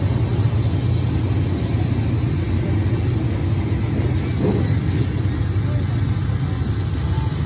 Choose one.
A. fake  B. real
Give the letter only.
B